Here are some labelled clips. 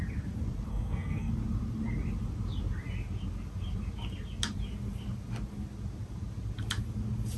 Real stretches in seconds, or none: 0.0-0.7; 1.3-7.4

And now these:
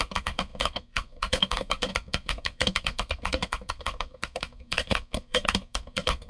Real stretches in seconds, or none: none

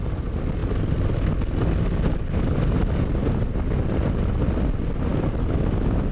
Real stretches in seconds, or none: 0.0-6.1

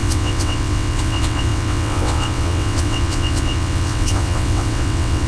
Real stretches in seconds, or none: none

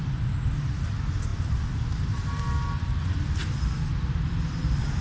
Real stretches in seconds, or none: 0.0-1.3; 2.4-5.0